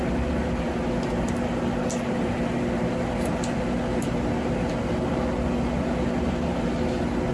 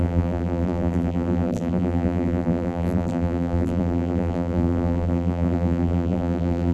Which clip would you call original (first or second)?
first